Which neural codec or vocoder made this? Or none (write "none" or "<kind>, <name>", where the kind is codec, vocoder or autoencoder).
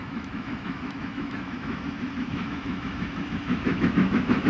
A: autoencoder, DAC-VAE